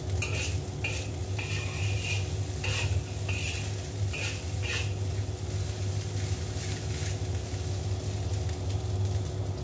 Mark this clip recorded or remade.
recorded